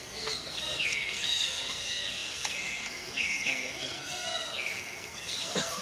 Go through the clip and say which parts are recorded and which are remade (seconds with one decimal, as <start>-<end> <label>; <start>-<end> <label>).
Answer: 0.0-5.8 remade